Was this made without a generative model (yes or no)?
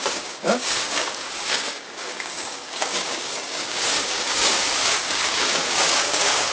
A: no